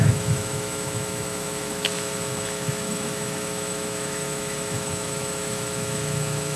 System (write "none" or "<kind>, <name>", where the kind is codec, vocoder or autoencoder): autoencoder, DAC-VAE